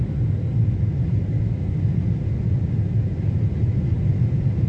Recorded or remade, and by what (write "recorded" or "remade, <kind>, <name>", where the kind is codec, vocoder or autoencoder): recorded